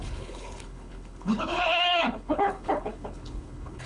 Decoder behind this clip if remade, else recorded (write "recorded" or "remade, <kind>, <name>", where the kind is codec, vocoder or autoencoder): remade, codec, HILCodec